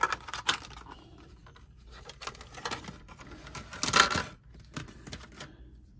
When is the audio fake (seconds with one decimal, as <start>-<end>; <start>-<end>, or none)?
none